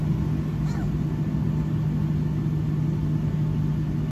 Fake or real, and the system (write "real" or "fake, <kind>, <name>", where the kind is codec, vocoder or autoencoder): real